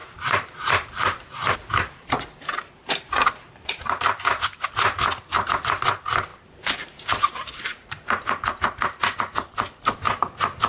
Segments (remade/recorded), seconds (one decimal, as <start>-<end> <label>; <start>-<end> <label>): 0.0-4.4 remade; 4.4-6.3 recorded; 6.3-9.0 remade; 9.0-10.7 recorded